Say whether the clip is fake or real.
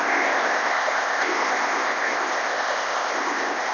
fake